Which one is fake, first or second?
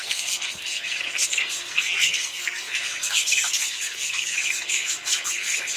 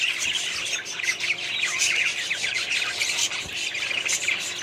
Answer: first